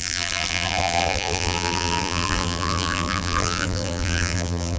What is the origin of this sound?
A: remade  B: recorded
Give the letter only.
A